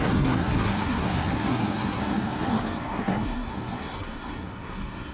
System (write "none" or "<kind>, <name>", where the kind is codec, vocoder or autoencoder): codec, SNAC